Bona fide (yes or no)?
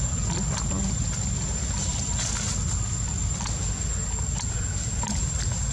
yes